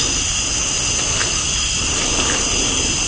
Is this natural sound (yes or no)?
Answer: yes